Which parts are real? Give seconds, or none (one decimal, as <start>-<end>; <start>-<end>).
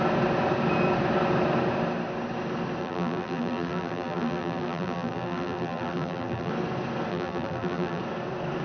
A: 0.0-2.8; 6.5-7.1; 8.0-8.6